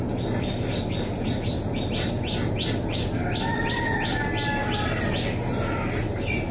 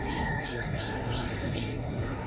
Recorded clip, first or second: first